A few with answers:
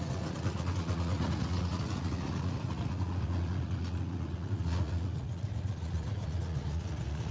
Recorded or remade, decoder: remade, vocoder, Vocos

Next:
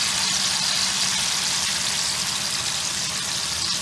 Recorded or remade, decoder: recorded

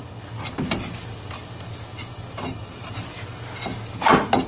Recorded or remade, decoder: recorded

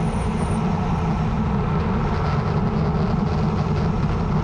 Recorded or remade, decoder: recorded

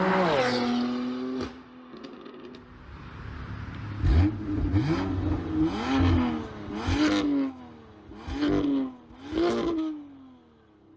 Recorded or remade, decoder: recorded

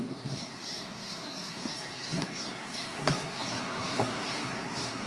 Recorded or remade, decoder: remade, codec, SNAC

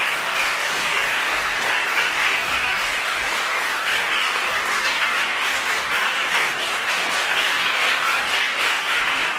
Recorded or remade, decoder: remade, codec, DAC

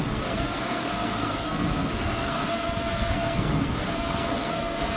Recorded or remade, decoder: remade, codec, SNAC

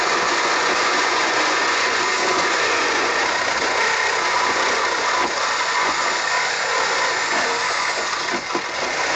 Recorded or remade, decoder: remade, vocoder, Vocos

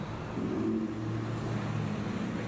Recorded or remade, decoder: recorded